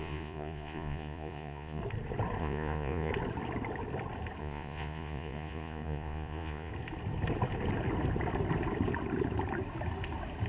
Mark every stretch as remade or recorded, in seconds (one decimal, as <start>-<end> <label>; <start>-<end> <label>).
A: 0.0-1.8 remade; 1.8-2.4 recorded; 2.4-3.1 remade; 3.1-4.4 recorded; 4.4-6.7 remade; 6.7-10.5 recorded